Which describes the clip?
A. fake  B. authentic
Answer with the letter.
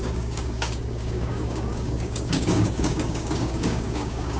A